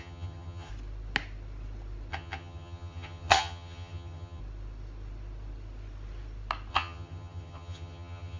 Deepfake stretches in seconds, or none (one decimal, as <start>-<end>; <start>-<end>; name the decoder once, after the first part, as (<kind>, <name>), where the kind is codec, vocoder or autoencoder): 0.0-0.7 (vocoder, HiFi-GAN); 2.1-4.4; 6.7-8.4